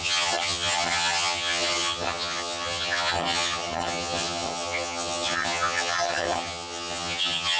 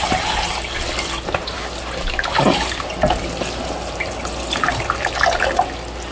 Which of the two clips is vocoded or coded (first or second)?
first